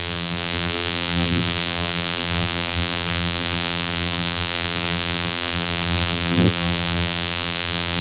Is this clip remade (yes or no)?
yes